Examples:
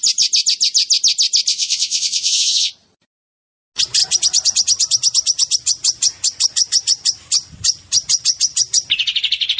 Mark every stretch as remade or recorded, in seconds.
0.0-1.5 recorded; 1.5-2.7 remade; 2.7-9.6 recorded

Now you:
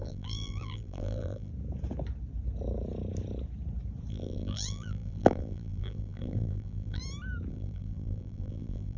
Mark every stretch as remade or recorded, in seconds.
0.0-1.5 remade; 1.5-4.1 recorded; 4.1-7.0 remade; 7.0-7.5 recorded; 7.5-9.0 remade

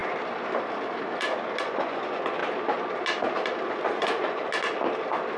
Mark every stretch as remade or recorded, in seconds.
0.0-1.6 recorded; 1.6-2.4 remade; 2.4-3.7 recorded; 3.7-4.4 remade; 4.4-5.4 recorded

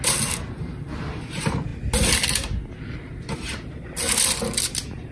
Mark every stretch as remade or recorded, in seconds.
0.0-5.1 recorded